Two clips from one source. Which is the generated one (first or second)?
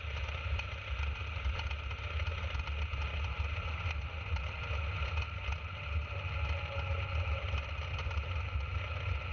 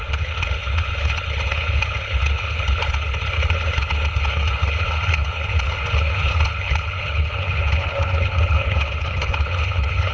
second